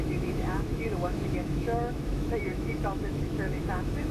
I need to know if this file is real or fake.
fake